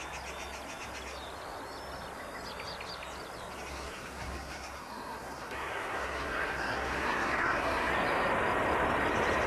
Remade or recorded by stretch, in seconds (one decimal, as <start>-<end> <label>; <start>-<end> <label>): 0.0-3.7 recorded; 3.7-7.9 remade; 7.9-9.5 recorded